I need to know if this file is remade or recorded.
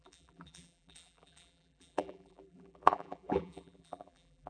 remade